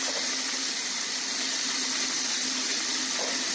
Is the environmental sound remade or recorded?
recorded